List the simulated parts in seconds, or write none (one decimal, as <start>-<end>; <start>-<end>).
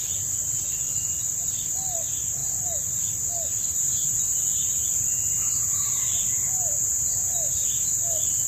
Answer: none